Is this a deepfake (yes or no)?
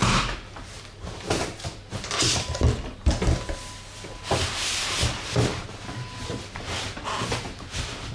no